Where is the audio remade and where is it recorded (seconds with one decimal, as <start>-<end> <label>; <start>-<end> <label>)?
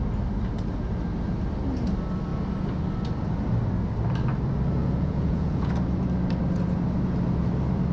0.0-4.8 recorded; 4.8-5.7 remade; 5.7-7.9 recorded